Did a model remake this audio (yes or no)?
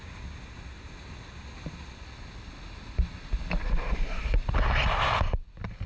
no